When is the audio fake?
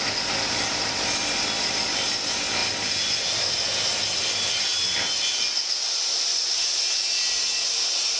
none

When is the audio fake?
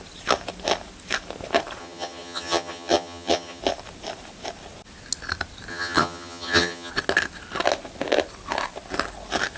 1.8-3.6 (vocoder, HiFi-GAN); 5.7-6.9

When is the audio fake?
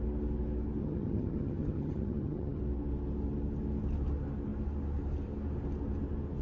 0.8-2.6 (vocoder, HiFi-GAN)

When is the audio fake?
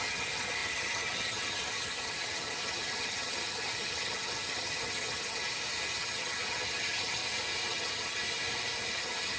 0.0-5.4 (vocoder, HiFi-GAN); 6.0-7.2; 7.7-8.2; 8.9-9.4